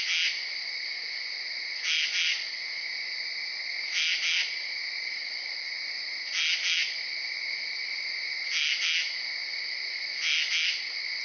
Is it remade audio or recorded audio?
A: recorded